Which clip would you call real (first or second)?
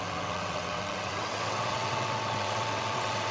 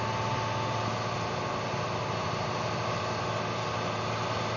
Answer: second